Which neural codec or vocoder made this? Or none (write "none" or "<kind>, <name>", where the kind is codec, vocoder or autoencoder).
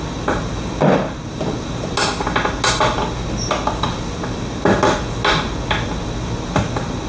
none